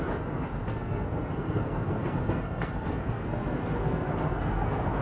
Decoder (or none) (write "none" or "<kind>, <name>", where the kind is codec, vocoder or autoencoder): codec, SNAC